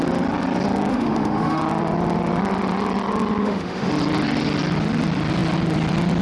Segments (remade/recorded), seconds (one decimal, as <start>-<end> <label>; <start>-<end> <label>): 0.0-0.9 recorded; 0.9-1.6 remade; 1.6-3.4 recorded; 3.4-3.9 remade; 3.9-6.2 recorded